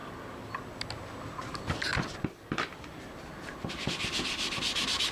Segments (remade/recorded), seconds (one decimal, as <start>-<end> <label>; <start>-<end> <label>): 0.0-5.1 recorded